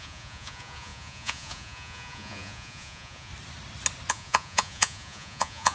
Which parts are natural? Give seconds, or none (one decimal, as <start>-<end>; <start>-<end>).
3.3-4.1